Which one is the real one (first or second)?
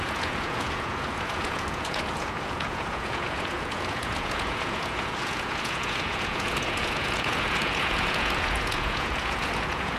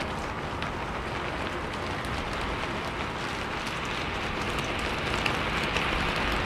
second